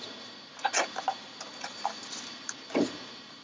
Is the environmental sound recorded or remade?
remade